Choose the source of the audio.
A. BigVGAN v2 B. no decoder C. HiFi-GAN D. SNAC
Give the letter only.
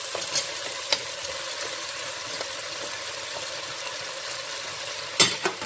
B